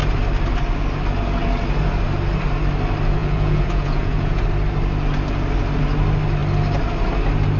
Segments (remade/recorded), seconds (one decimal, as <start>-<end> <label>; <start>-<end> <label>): 0.0-3.2 recorded; 3.2-4.4 remade; 4.4-7.6 recorded